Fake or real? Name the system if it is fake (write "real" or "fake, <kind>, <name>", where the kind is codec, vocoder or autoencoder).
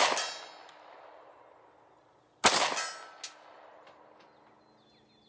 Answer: real